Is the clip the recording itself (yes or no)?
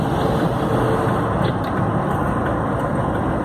yes